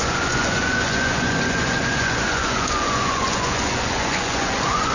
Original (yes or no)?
no